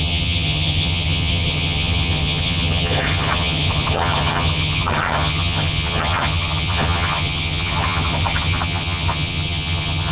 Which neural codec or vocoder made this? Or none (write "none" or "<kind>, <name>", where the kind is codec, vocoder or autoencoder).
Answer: vocoder, HiFi-GAN